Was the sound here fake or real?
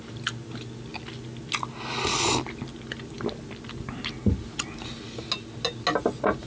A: real